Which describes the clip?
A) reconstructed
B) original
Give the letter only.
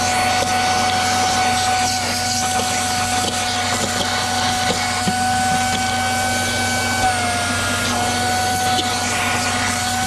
B